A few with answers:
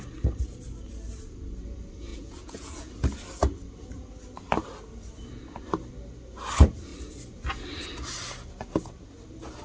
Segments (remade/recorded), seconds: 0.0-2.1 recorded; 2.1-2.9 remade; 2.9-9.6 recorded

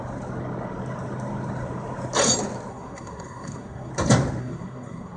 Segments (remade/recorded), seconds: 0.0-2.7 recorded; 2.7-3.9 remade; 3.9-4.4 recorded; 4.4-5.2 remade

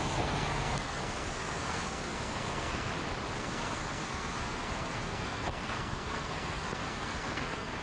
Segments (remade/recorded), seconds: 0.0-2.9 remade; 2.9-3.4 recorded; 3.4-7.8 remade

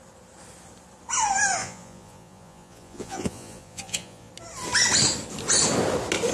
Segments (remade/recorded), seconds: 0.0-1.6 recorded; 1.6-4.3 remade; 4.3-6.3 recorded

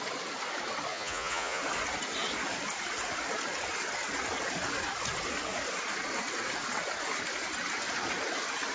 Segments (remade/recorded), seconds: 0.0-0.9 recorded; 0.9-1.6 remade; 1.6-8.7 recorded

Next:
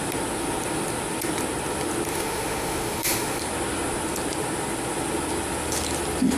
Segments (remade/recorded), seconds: 0.0-2.1 recorded; 2.1-3.4 remade; 3.4-6.4 recorded

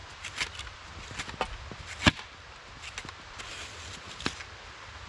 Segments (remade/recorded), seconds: 0.0-5.1 recorded

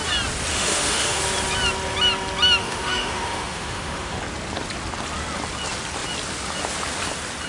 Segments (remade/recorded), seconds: 0.0-0.5 recorded; 0.5-1.2 remade; 1.2-2.6 recorded; 2.6-4.2 remade; 4.2-7.5 recorded